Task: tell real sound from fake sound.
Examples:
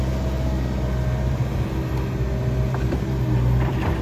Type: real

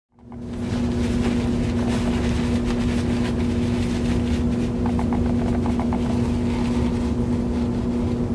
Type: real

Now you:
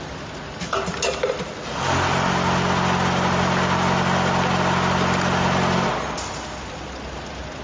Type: real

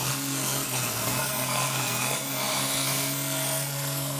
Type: fake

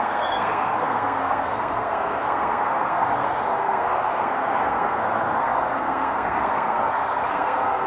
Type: fake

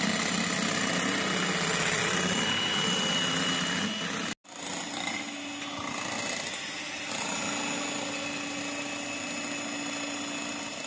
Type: real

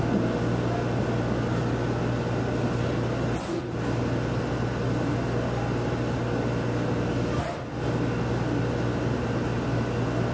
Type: real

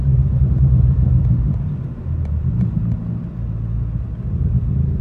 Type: real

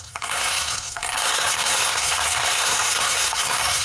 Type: fake